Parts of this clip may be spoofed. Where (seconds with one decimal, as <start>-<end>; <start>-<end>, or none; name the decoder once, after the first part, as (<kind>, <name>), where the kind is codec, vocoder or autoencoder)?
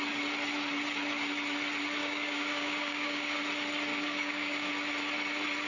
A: 2.0-3.4 (codec, DAC); 3.9-4.7